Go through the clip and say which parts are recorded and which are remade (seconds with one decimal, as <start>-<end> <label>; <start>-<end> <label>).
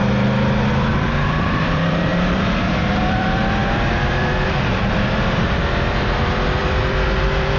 0.0-0.7 recorded; 0.7-7.6 remade